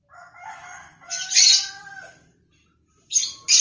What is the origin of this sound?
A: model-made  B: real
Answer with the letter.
B